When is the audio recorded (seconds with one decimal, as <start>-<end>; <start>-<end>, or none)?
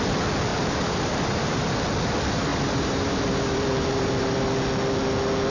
0.0-0.5; 1.7-2.5; 4.5-5.5